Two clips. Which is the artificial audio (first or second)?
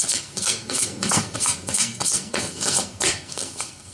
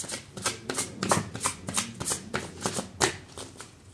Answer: first